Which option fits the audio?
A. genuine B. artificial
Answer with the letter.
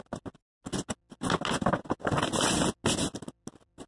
A